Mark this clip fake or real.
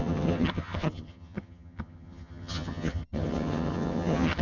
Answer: fake